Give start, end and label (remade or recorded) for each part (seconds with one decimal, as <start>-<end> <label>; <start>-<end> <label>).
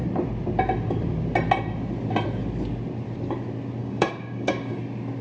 0.0-3.8 recorded; 3.8-4.8 remade; 4.8-5.2 recorded